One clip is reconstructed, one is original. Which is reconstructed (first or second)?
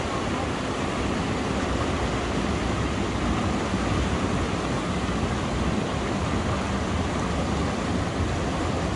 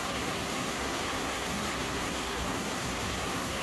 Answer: second